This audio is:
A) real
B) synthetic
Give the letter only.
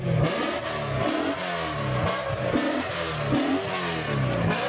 A